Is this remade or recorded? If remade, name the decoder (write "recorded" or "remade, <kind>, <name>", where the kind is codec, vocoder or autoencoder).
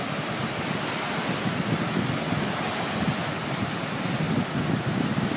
recorded